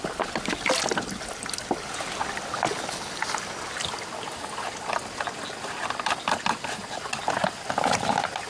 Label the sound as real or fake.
real